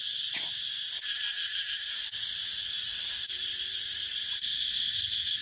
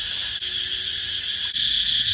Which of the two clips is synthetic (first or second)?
first